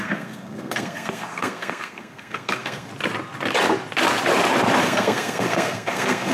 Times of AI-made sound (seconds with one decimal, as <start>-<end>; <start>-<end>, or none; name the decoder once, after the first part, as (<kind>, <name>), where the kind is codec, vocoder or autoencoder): 0.0-2.9 (codec, SNAC); 4.8-6.3